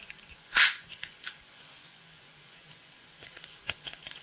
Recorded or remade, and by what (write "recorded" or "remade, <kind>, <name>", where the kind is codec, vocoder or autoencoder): remade, vocoder, Vocos